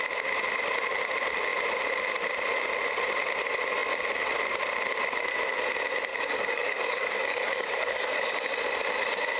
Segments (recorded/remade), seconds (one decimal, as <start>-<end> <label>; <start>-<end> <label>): 0.0-6.1 recorded; 6.1-8.3 remade; 8.3-9.4 recorded